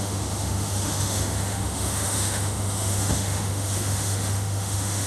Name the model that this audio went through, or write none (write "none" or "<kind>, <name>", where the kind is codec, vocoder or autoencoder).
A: autoencoder, DAC-VAE